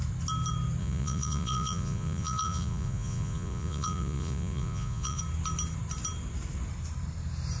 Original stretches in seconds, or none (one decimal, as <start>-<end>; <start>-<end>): 0.0-0.8; 5.2-7.6